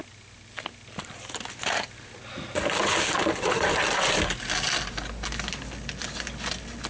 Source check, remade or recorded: recorded